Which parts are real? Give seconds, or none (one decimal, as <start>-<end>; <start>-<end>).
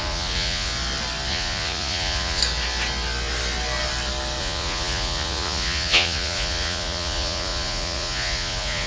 0.7-1.3; 2.4-4.4